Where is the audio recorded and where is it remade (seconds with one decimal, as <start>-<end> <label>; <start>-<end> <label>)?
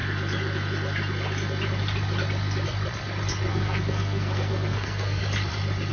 0.0-3.5 recorded; 3.5-5.2 remade; 5.2-5.9 recorded